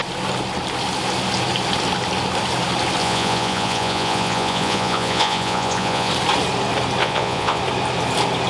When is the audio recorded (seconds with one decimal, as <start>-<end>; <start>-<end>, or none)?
0.0-3.0; 6.1-7.0; 7.6-8.5